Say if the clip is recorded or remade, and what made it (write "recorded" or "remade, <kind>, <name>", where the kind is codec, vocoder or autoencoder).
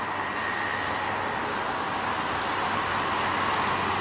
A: recorded